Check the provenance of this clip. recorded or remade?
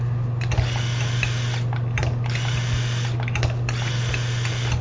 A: recorded